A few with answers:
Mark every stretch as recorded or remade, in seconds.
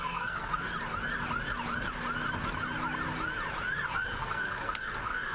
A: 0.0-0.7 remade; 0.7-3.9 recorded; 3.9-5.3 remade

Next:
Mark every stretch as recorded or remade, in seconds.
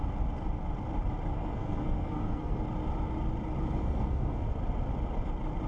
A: 0.0-1.3 recorded; 1.3-2.6 remade; 2.6-3.8 recorded; 3.8-4.5 remade; 4.5-5.7 recorded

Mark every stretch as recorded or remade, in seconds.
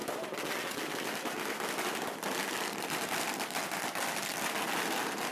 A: 0.0-5.3 recorded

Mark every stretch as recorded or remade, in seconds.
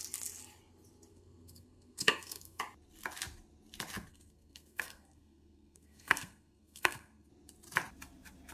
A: 0.0-1.1 recorded; 1.1-2.6 remade; 2.6-4.1 recorded; 4.1-7.3 remade; 7.3-8.5 recorded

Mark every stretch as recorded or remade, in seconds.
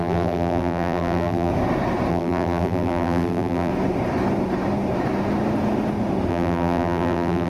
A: 0.0-1.5 remade; 1.5-2.1 recorded; 2.1-3.7 remade; 3.7-6.3 recorded; 6.3-7.5 remade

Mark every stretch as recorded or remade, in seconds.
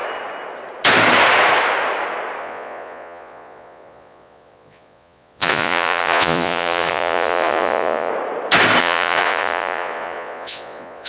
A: 0.0-2.4 recorded; 2.4-8.1 remade; 8.1-8.8 recorded; 8.8-11.1 remade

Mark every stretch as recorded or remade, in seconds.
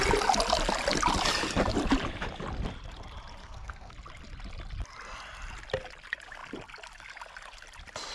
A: 0.0-3.4 recorded; 3.4-3.9 remade; 3.9-8.1 recorded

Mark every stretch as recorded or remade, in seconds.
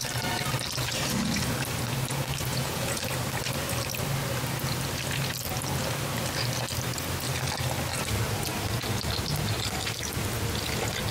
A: 0.0-2.5 recorded; 2.5-3.0 remade; 3.0-11.1 recorded